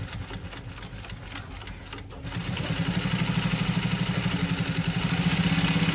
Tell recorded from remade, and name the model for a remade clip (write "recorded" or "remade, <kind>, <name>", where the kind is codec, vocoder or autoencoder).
recorded